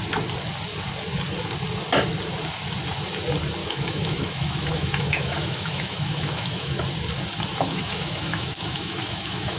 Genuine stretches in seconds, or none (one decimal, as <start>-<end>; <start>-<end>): 0.0-3.6; 6.8-7.5